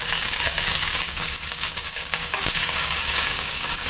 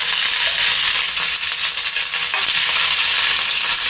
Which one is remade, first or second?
first